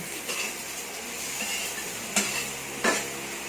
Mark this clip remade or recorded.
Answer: recorded